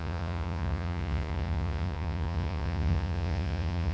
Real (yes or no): no